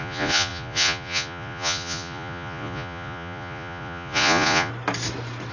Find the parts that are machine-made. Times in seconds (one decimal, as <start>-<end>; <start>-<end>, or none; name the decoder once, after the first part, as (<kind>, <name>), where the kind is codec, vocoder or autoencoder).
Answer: 0.0-4.7 (vocoder, Vocos)